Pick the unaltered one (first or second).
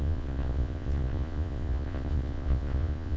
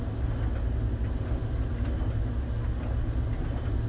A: second